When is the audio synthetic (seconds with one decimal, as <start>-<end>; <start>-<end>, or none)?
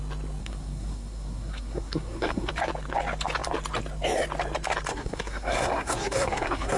0.4-2.5; 4.9-6.8